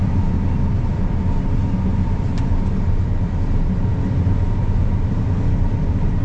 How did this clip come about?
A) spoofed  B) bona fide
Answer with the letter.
B